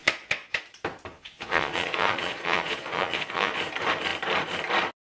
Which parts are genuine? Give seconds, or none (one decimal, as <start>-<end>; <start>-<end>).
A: 0.6-1.1; 3.6-5.1